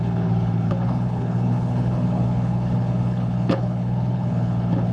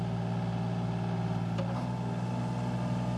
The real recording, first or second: second